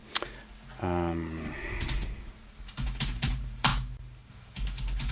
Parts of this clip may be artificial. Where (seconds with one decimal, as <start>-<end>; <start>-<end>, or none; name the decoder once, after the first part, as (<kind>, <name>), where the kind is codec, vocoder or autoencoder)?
2.2-3.7 (vocoder, BigVGAN v2); 4.3-5.1